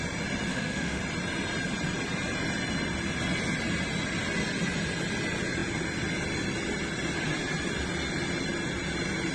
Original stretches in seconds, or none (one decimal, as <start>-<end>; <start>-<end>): 0.0-0.5; 1.0-9.3

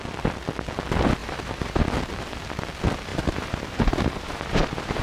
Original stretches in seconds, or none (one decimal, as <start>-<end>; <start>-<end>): 0.0-1.2; 1.8-3.1